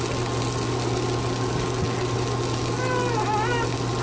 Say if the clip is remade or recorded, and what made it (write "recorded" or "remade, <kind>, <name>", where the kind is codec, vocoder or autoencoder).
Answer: recorded